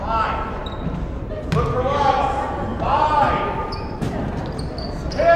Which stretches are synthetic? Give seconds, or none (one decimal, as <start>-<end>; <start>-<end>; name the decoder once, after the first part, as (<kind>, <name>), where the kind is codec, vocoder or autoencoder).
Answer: 2.7-4.6 (vocoder, BigVGAN v2)